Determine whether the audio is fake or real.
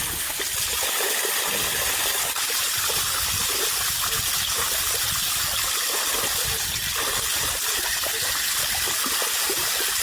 real